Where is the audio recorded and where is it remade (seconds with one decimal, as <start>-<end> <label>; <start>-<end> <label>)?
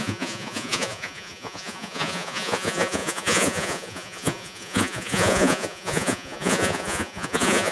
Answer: 0.0-7.7 remade